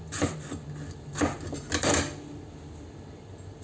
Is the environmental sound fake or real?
real